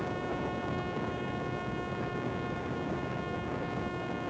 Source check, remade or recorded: remade